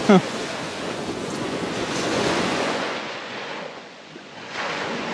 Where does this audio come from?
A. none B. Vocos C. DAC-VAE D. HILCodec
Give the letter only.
B